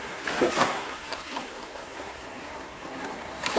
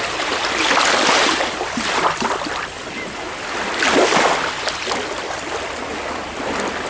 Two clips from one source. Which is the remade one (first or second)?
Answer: first